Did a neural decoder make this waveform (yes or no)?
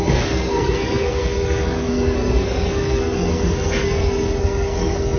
yes